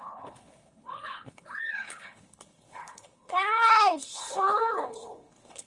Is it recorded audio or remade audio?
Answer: remade